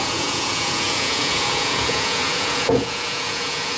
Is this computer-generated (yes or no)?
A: yes